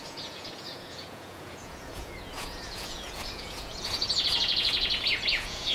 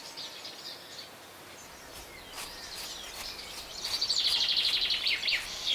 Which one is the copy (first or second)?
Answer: first